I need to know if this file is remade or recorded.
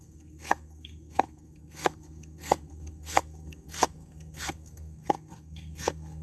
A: remade